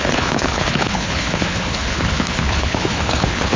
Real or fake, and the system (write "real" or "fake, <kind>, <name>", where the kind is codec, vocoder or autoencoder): fake, codec, HILCodec